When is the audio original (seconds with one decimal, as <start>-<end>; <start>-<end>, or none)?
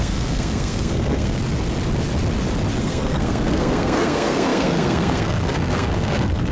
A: 1.4-2.8